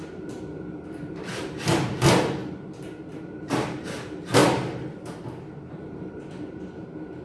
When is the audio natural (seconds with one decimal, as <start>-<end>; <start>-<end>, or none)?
1.4-2.4; 3.1-4.4; 5.7-7.2